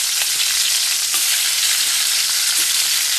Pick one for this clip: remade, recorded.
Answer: recorded